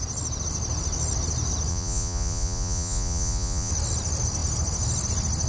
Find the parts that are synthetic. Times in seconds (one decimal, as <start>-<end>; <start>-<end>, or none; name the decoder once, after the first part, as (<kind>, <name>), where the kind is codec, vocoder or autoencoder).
1.7-3.7 (vocoder, Vocos)